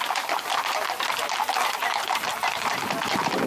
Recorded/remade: recorded